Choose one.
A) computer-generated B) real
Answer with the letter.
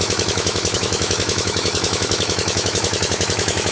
A